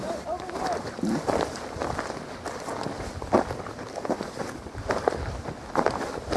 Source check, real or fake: real